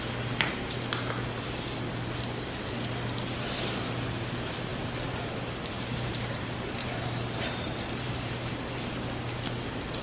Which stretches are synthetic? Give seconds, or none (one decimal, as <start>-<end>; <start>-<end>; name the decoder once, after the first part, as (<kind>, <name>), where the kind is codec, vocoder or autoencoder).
4.7-8.5 (vocoder, BigVGAN v2)